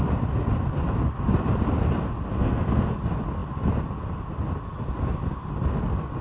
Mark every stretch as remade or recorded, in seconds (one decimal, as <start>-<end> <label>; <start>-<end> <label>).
0.0-2.3 recorded; 2.3-2.9 remade; 2.9-6.2 recorded